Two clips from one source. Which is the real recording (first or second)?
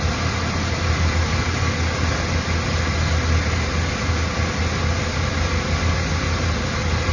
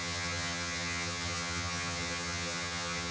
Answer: first